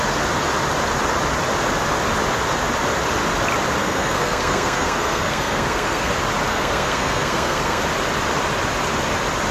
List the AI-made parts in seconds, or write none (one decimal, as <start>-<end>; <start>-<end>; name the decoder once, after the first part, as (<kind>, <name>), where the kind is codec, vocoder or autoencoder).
3.8-6.1 (codec, SNAC); 6.5-7.8